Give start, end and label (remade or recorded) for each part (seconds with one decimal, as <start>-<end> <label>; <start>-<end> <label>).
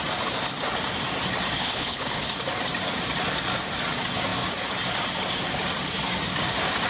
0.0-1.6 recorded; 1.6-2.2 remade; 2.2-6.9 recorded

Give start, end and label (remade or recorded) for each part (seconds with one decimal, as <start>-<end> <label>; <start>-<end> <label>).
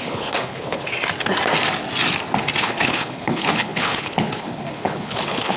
0.0-0.9 remade; 0.9-2.6 recorded; 2.6-5.6 remade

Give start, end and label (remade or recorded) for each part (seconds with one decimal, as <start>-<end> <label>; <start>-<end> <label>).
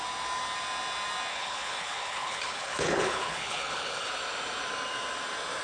0.0-1.3 recorded; 1.3-4.1 remade; 4.1-5.6 recorded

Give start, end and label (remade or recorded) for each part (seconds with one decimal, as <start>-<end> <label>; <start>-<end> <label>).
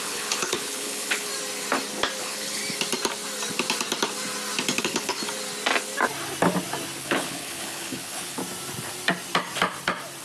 0.0-1.3 remade; 1.3-2.2 recorded; 2.2-2.6 remade; 2.6-4.8 recorded; 4.8-5.2 remade; 5.2-7.0 recorded; 7.0-8.4 remade; 8.4-10.2 recorded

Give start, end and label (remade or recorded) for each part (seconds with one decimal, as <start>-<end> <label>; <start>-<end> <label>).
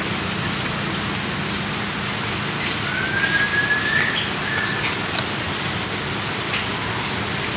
0.0-7.6 recorded